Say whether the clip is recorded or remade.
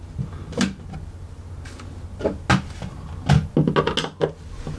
recorded